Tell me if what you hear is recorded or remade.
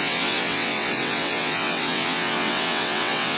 remade